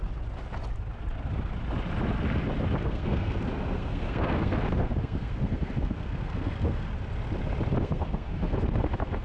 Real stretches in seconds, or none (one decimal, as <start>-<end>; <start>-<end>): 0.0-2.8; 6.9-7.8